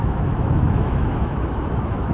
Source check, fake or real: fake